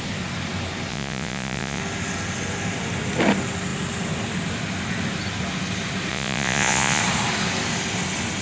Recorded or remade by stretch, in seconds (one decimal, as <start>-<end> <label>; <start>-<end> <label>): 0.0-0.9 recorded; 0.9-1.8 remade; 1.8-6.1 recorded; 6.1-7.0 remade; 7.0-8.4 recorded

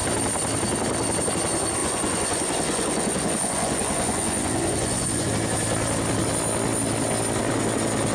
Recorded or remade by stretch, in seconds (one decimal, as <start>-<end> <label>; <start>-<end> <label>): 0.0-1.8 recorded; 1.8-5.3 remade; 5.3-8.1 recorded

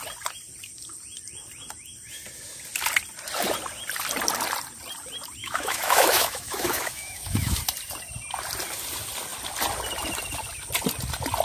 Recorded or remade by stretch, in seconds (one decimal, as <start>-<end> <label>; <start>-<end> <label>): 0.0-5.4 recorded; 5.4-7.6 remade; 7.6-11.4 recorded

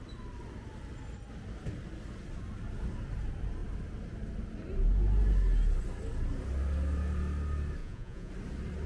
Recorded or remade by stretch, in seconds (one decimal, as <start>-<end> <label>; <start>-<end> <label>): 0.0-7.8 recorded; 7.8-8.3 remade; 8.3-8.9 recorded

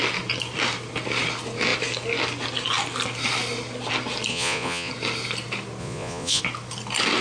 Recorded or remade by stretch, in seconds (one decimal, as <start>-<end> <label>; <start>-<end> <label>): 0.0-4.3 recorded; 4.3-4.9 remade; 4.9-5.8 recorded; 5.8-6.4 remade; 6.4-7.2 recorded